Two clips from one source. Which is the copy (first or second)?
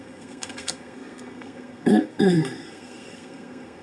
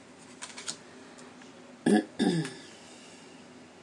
first